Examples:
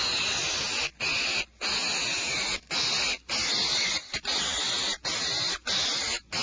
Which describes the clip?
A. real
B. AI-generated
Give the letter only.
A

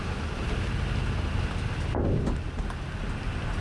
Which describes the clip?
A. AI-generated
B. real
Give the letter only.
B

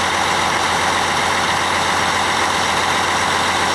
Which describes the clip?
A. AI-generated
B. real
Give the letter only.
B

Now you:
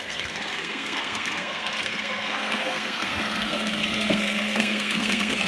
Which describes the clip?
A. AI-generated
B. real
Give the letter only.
A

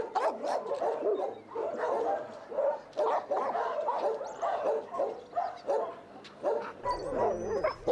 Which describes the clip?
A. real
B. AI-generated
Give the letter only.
A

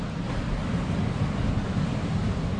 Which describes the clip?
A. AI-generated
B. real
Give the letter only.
B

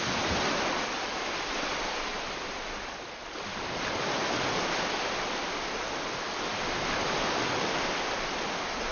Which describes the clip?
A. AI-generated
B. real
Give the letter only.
B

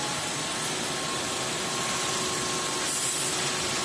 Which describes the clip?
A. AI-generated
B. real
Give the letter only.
B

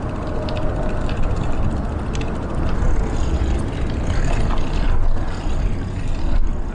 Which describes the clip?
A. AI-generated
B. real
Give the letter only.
B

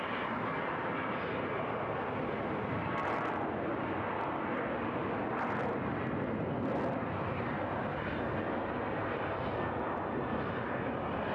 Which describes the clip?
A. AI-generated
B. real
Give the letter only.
B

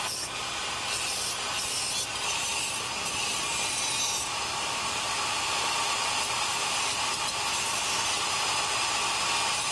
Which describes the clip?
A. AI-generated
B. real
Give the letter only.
B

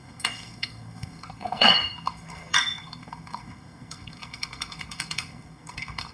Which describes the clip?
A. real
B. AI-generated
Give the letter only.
B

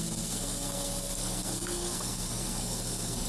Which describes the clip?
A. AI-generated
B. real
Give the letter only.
A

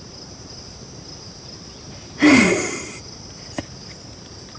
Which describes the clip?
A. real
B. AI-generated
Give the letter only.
A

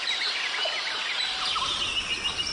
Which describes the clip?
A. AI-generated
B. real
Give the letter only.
B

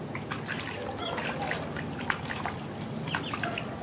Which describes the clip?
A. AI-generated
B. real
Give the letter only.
B